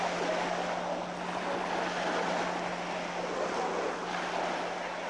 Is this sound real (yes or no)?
yes